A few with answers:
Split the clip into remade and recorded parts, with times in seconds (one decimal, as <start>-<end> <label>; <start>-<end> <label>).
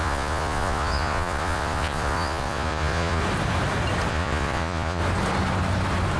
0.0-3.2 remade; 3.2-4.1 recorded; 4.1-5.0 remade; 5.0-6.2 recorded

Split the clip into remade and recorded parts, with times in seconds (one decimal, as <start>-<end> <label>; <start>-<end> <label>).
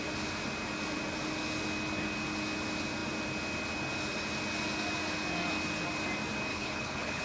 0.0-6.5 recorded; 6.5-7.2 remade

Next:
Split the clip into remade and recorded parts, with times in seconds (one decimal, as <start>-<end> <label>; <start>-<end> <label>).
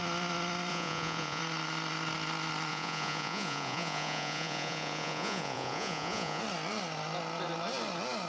0.0-0.7 recorded; 0.7-1.4 remade; 1.4-2.7 recorded; 2.7-6.4 remade; 6.4-8.3 recorded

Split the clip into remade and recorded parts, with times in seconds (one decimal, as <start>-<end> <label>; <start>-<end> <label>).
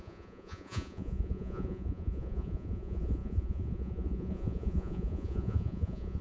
0.0-6.2 remade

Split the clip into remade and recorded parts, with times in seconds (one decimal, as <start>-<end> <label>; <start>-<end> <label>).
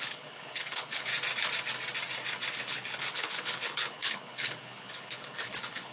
0.0-1.1 remade; 1.1-2.5 recorded; 2.5-5.9 remade